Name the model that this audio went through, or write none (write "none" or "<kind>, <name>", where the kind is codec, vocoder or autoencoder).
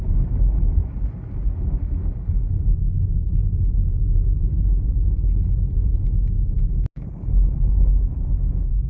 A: none